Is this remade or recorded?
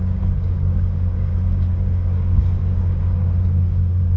remade